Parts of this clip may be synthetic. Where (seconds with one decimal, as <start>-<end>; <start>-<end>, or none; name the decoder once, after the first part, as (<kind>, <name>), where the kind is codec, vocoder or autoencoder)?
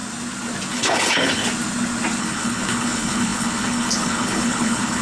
0.7-1.4 (codec, HILCodec); 2.2-5.0